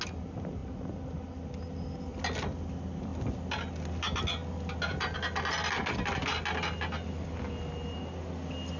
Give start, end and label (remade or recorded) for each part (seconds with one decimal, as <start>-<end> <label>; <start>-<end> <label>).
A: 0.0-8.8 recorded